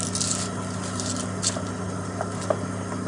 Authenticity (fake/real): real